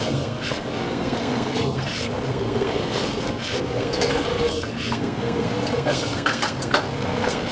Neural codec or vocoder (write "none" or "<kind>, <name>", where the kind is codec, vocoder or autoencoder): codec, SNAC